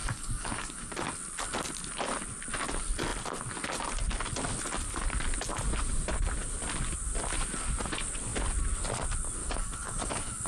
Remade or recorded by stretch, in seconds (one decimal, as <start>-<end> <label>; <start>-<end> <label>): 0.0-0.9 remade; 0.9-9.4 recorded; 9.4-10.5 remade